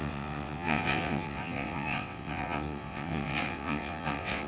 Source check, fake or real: fake